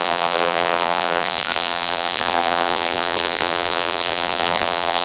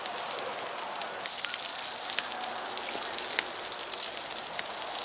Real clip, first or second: second